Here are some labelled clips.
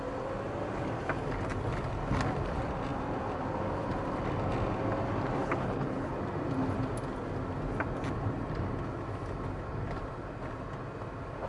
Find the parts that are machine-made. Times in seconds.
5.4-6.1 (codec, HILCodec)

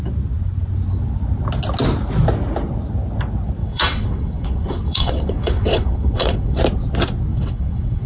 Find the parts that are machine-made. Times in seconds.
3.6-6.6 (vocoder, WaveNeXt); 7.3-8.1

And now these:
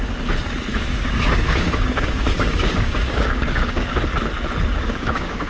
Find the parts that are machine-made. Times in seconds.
0.7-4.0 (codec, DAC); 4.7-5.5